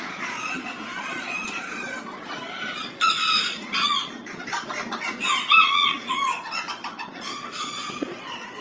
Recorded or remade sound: remade